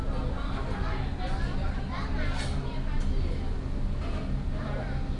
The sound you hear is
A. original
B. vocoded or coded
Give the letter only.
A